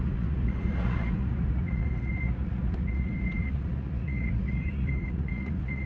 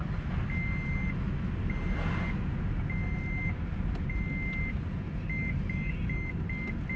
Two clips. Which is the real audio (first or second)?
second